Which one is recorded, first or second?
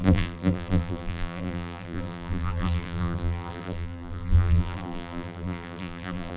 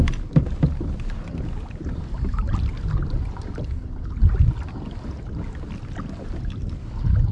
second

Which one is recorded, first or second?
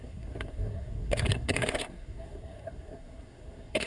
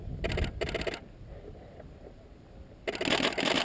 second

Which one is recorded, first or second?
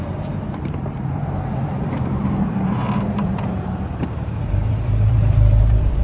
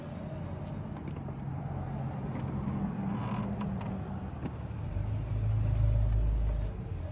second